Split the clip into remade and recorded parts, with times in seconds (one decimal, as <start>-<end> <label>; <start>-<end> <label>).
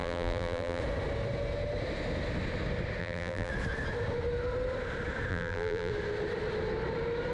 0.0-0.8 remade; 0.8-3.0 recorded; 3.0-3.5 remade; 3.5-5.3 recorded; 5.3-5.9 remade; 5.9-7.3 recorded